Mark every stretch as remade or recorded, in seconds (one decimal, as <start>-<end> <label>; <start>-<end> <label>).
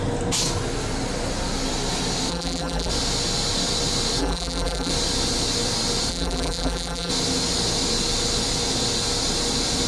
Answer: 0.0-2.3 recorded; 2.3-2.9 remade; 2.9-4.2 recorded; 4.2-4.9 remade; 4.9-6.1 recorded; 6.1-7.1 remade; 7.1-9.9 recorded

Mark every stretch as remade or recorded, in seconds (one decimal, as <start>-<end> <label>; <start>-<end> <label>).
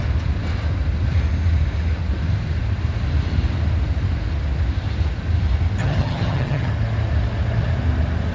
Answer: 0.0-5.8 recorded; 5.8-6.7 remade; 6.7-8.3 recorded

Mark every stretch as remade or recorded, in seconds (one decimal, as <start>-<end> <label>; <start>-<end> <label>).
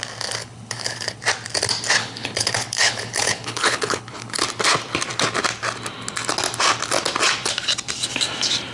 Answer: 0.0-0.4 recorded; 0.4-1.2 remade; 1.2-2.0 recorded; 2.0-4.4 remade; 4.4-8.7 recorded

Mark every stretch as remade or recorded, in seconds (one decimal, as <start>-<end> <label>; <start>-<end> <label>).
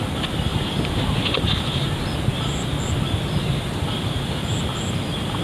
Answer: 0.0-0.5 recorded; 0.5-1.9 remade; 1.9-5.4 recorded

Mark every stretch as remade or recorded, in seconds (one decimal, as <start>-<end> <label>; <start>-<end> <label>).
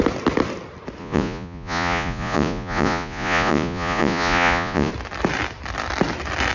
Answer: 0.0-1.0 recorded; 1.0-4.9 remade; 4.9-6.5 recorded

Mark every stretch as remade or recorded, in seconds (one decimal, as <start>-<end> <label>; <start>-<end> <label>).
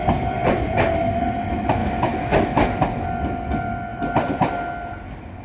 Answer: 0.0-1.8 recorded; 1.8-2.6 remade; 2.6-5.4 recorded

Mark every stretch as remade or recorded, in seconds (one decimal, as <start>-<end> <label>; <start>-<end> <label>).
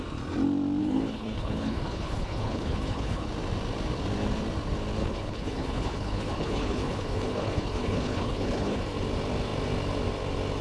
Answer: 0.0-0.8 recorded; 0.8-3.3 remade; 3.3-5.0 recorded; 5.0-8.8 remade; 8.8-10.6 recorded